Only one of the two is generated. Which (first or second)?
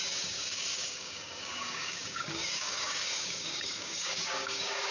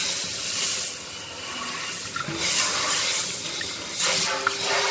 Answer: first